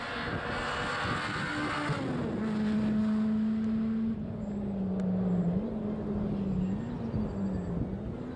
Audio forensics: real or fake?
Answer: real